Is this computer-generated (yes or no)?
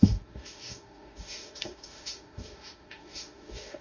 yes